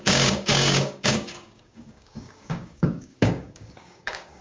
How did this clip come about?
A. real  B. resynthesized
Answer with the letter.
B